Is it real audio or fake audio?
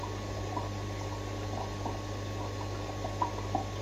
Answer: real